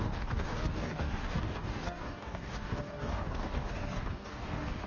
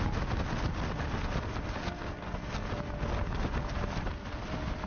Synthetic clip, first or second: first